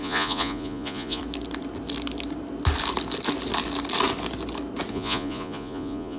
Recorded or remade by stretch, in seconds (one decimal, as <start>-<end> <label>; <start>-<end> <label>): 0.0-1.2 remade; 1.2-4.9 recorded; 4.9-6.2 remade